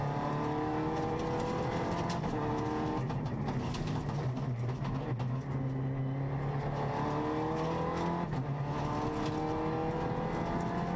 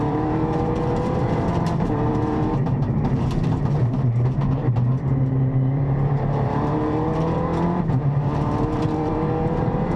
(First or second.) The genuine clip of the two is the first